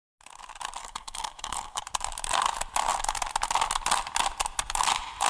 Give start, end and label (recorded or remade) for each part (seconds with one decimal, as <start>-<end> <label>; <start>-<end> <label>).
0.0-0.8 recorded; 0.8-1.8 remade; 1.8-5.3 recorded